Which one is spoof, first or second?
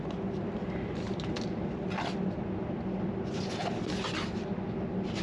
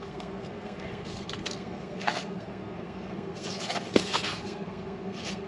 second